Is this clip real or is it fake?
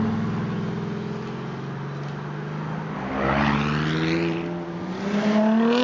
real